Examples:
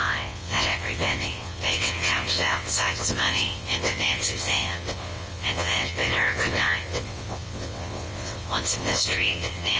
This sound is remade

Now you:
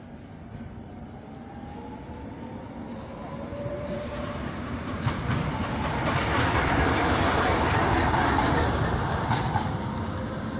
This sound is recorded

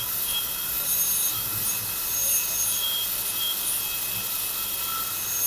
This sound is recorded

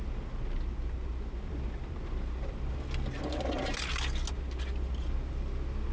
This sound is recorded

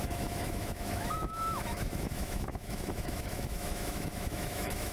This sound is remade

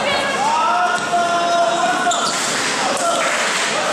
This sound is recorded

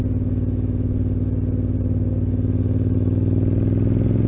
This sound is recorded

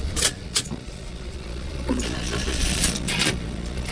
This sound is remade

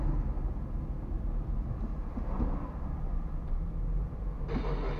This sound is recorded